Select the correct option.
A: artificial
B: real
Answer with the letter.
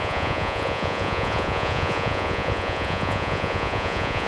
A